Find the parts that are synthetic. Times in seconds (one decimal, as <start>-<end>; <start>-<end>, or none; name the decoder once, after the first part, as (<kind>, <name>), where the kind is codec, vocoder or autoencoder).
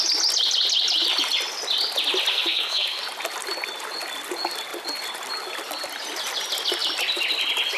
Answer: 2.3-3.0 (codec, SNAC)